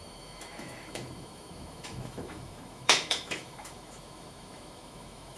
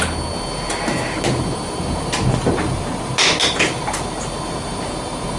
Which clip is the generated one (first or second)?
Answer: first